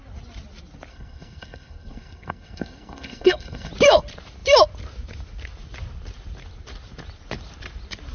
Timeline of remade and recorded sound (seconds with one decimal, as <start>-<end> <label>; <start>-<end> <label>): 0.0-0.9 recorded; 0.9-3.7 remade; 3.7-8.1 recorded